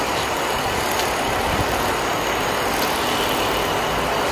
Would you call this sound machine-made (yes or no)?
no